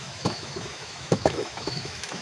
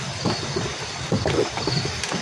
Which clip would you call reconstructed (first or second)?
first